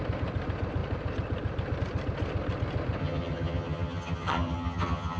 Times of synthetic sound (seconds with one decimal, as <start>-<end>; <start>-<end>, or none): 3.0-5.2